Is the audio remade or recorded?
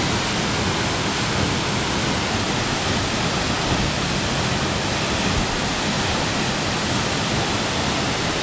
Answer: recorded